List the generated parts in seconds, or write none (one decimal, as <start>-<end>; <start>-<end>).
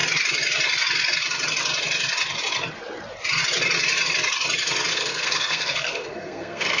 4.9-6.8